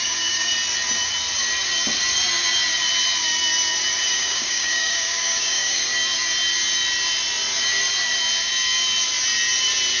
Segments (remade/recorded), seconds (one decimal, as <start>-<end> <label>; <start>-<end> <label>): 0.0-0.5 remade; 0.5-4.1 recorded; 4.1-5.8 remade; 5.8-10.0 recorded